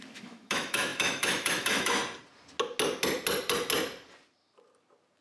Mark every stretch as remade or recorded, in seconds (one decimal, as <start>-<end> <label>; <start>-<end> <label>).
0.0-2.0 remade; 2.0-5.2 recorded